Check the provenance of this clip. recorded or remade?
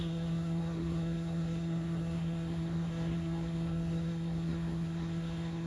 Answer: remade